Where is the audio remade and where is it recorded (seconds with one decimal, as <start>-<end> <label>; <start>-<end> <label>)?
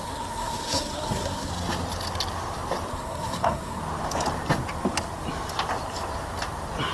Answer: 0.0-1.5 remade; 1.5-2.9 recorded; 2.9-3.8 remade; 3.8-6.9 recorded